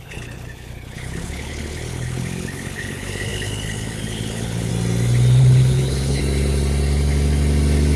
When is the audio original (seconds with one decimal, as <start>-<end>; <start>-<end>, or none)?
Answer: 4.7-5.4; 6.2-8.0

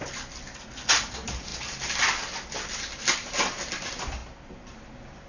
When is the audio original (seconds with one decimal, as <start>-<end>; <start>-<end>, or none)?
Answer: 0.0-5.3

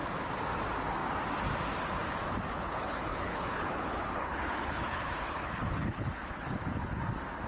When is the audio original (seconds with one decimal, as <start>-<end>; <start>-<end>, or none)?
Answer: 0.0-2.5; 7.0-7.5